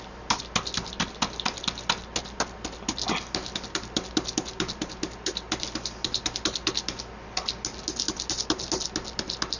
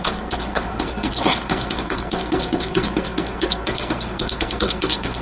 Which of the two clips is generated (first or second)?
second